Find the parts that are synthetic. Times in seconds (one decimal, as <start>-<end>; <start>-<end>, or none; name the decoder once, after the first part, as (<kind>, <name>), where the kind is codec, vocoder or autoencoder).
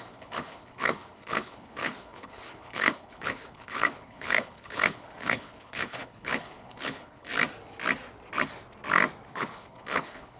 0.0-7.3 (codec, HILCodec); 9.3-10.4